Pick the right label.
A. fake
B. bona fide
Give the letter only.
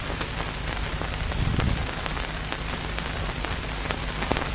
A